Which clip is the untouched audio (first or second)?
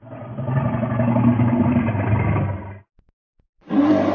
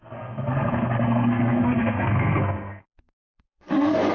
first